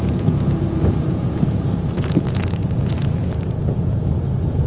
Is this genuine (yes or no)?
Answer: no